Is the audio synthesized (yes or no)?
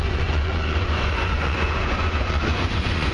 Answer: yes